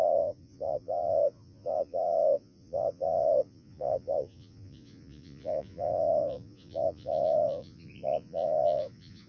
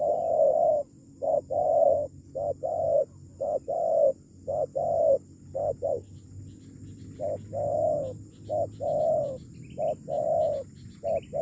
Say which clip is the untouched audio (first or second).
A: second